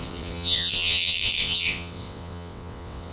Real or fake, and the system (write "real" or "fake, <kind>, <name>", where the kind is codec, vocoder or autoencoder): fake, vocoder, WaveNeXt